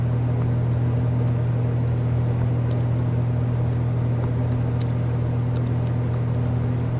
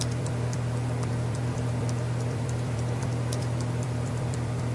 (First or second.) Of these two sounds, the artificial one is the second